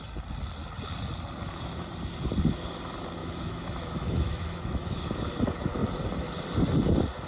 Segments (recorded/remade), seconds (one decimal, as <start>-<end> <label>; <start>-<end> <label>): 0.0-3.2 recorded; 3.2-5.3 remade; 5.3-7.3 recorded

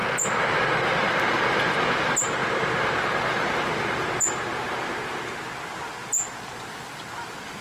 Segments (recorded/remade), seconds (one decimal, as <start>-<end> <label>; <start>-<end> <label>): 0.0-7.6 recorded

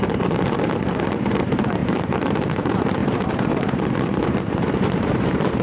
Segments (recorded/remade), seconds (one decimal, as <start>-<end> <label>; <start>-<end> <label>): 0.0-5.6 remade

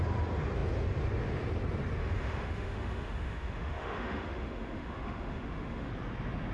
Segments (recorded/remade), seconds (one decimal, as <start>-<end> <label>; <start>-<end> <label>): 0.0-2.0 recorded; 2.0-5.9 remade; 5.9-6.5 recorded

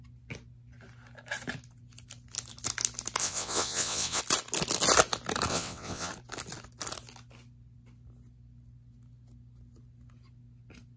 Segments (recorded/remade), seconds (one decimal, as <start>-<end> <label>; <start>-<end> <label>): 0.0-3.2 recorded; 3.2-4.2 remade; 4.2-5.5 recorded; 5.5-6.1 remade; 6.1-11.0 recorded

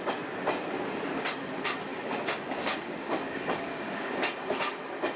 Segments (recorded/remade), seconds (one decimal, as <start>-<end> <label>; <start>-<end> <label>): 0.0-1.9 recorded; 1.9-4.2 remade; 4.2-5.2 recorded

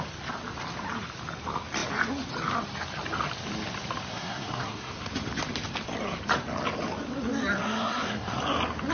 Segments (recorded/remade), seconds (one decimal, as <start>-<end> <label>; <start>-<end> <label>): 0.0-4.1 recorded; 4.1-5.1 remade; 5.1-7.6 recorded; 7.6-8.4 remade; 8.4-8.9 recorded